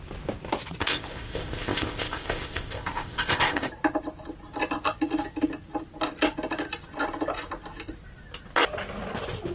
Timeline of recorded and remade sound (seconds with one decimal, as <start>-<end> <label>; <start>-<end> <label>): 0.0-0.8 recorded; 0.8-3.7 remade; 3.7-9.5 recorded